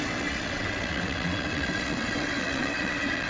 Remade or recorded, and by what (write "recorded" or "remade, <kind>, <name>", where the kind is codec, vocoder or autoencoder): remade, vocoder, WaveNeXt